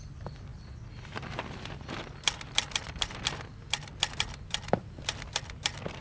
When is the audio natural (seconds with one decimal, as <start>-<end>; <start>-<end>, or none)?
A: 0.0-6.0